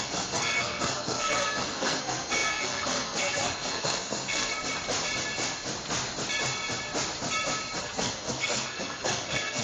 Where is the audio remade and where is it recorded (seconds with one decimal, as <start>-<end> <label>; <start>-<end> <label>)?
0.0-4.5 remade; 4.5-7.8 recorded; 7.8-9.6 remade